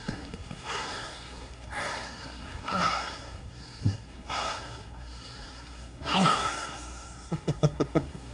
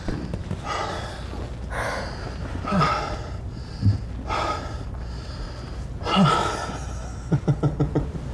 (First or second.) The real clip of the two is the second